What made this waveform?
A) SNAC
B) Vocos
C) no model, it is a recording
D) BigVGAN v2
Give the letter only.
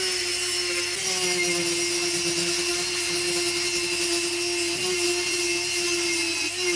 C